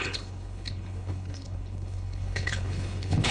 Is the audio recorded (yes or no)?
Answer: no